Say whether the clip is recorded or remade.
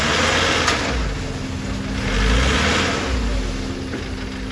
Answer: recorded